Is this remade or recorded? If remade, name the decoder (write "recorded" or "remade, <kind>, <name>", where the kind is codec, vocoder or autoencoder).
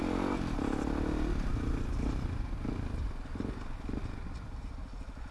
recorded